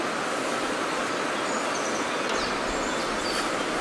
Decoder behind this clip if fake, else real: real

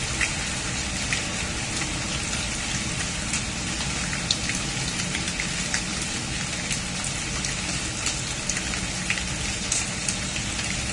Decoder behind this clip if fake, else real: real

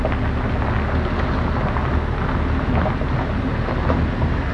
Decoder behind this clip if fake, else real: real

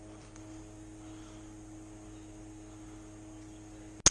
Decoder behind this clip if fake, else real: real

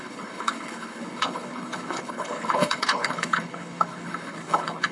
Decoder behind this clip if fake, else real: fake, codec, HILCodec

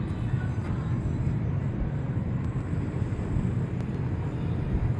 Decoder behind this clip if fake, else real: real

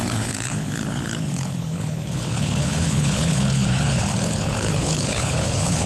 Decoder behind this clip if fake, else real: fake, codec, HILCodec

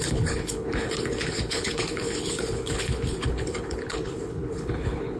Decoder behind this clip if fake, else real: fake, codec, HILCodec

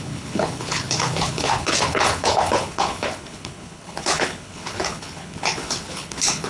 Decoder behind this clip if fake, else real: fake, codec, HILCodec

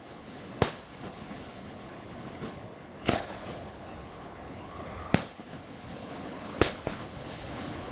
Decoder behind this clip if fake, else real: fake, codec, HILCodec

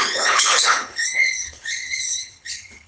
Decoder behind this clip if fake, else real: fake, codec, HILCodec